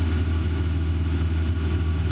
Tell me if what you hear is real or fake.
real